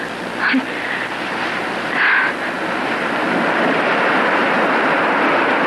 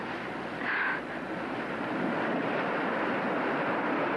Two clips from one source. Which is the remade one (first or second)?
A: second